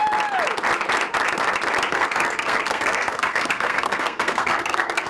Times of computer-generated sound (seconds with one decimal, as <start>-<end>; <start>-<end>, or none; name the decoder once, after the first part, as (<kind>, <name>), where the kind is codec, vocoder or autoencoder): 1.9-5.1 (codec, SNAC)